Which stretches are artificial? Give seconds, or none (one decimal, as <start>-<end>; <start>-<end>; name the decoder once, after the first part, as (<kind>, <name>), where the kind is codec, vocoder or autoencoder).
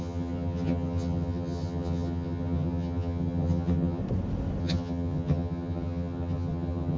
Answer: 0.0-4.0 (vocoder, HiFi-GAN); 4.6-7.0